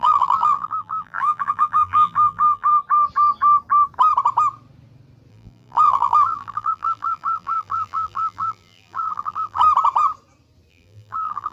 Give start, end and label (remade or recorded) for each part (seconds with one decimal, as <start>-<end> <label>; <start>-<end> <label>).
0.0-2.7 remade; 2.7-5.3 recorded; 5.3-9.6 remade; 9.6-10.7 recorded; 10.7-11.5 remade